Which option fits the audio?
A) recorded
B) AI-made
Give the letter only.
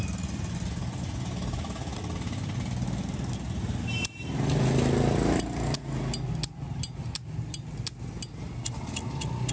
A